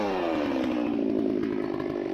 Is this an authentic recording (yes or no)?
yes